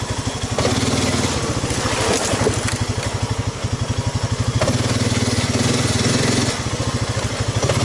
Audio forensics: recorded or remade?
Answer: recorded